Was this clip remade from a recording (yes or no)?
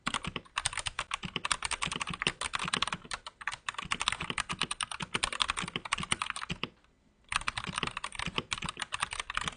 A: no